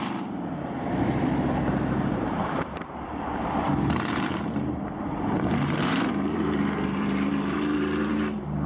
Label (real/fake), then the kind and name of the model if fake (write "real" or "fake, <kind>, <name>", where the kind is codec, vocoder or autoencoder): fake, vocoder, BigVGAN v2